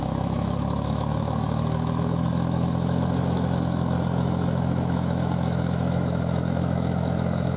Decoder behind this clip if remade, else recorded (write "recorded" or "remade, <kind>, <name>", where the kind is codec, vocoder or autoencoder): remade, autoencoder, DAC-VAE